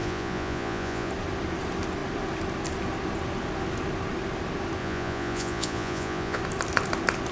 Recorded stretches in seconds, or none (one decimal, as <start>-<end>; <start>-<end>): 1.1-4.8; 6.4-7.3